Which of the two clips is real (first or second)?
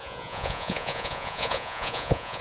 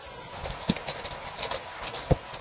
second